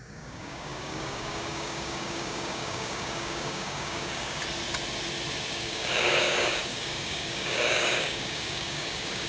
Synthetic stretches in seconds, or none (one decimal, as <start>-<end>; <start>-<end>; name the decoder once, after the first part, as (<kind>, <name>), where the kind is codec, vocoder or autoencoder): 0.0-4.4 (codec, DAC); 5.5-9.3

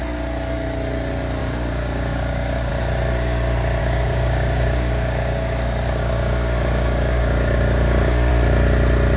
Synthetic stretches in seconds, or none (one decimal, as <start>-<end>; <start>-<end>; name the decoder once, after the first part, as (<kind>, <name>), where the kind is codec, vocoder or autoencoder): 1.4-2.7 (codec, DAC); 3.8-8.3

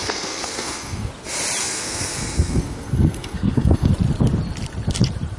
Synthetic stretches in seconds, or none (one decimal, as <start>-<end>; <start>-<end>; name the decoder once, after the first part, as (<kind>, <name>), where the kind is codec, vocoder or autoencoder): 0.0-1.1 (codec, SNAC); 1.6-3.9

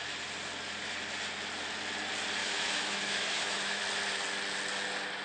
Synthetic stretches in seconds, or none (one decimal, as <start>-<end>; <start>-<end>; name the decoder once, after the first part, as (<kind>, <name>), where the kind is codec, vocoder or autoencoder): 2.4-3.8 (autoencoder, DAC-VAE)

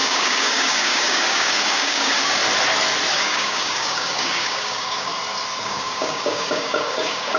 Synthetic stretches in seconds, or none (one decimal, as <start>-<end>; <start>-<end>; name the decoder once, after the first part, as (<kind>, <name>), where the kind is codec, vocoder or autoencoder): 0.0-2.4 (codec, DAC); 3.1-5.1; 5.6-7.4